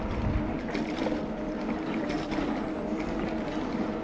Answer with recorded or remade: recorded